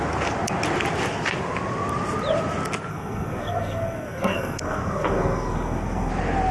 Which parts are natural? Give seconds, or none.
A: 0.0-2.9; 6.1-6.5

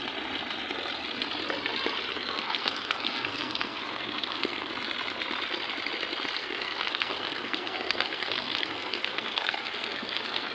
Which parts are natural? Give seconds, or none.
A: 0.0-2.1; 4.7-6.4

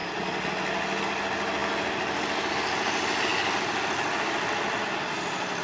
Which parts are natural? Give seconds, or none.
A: 0.0-5.6

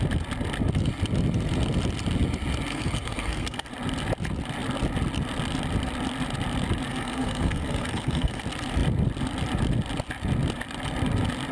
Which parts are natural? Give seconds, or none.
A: 0.0-2.7; 3.7-6.9; 8.4-11.5